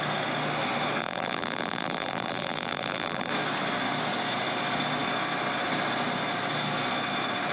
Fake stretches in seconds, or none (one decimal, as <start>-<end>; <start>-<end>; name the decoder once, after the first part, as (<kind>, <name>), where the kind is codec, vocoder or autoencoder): 1.0-3.3 (vocoder, BigVGAN v2)